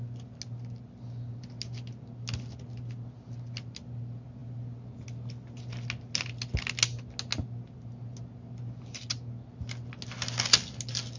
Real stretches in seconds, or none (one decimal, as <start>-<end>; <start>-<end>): 0.0-11.2